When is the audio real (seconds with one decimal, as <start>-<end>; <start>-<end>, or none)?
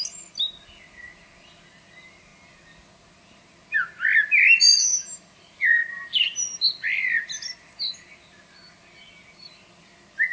0.0-10.3